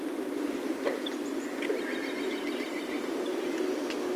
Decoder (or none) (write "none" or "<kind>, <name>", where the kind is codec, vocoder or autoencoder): none